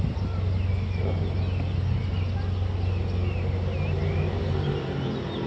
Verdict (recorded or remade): recorded